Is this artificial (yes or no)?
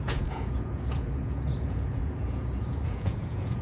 yes